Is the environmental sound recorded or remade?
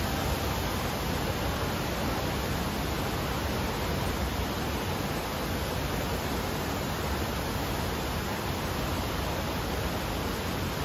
recorded